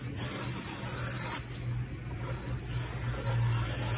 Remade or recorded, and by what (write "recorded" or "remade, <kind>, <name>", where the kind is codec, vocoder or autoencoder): recorded